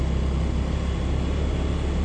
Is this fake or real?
real